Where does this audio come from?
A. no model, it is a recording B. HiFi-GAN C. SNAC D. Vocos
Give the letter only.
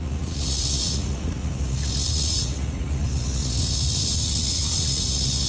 D